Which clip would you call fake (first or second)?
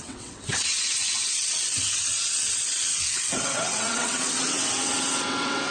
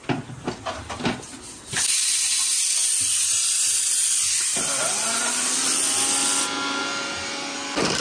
first